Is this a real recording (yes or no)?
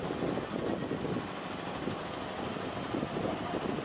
yes